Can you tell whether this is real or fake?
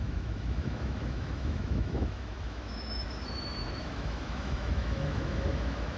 fake